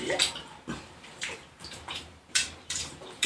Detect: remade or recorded remade